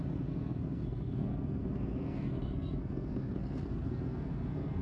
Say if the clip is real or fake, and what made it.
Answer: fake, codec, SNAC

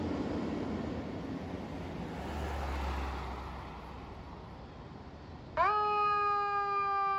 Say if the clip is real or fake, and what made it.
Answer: real